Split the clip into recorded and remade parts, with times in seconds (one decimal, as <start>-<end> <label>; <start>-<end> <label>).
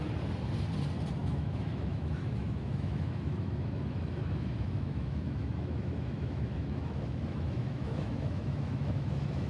0.0-1.2 recorded; 1.2-9.5 remade